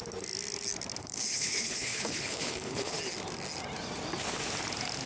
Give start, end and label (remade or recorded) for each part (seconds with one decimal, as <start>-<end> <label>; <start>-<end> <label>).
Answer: 0.0-1.0 recorded; 1.0-3.0 remade; 3.0-5.1 recorded